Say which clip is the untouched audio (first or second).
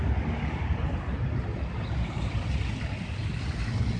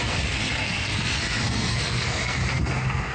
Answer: first